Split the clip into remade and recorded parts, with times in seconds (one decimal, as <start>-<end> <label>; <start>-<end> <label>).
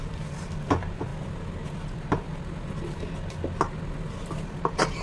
0.0-5.0 recorded